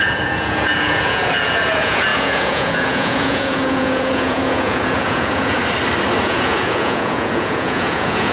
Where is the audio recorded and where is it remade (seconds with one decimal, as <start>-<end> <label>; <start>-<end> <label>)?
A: 0.0-5.6 remade; 5.6-6.2 recorded; 6.2-8.3 remade